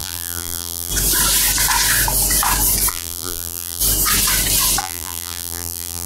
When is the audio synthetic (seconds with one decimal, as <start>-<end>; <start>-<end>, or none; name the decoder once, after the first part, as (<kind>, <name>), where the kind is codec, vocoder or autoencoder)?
0.0-0.9 (vocoder, BigVGAN v2); 2.9-3.8; 4.8-6.1